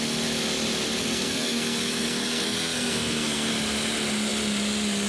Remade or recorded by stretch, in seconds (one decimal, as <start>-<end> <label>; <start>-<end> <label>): 0.0-1.1 recorded; 1.1-3.5 remade; 3.5-5.1 recorded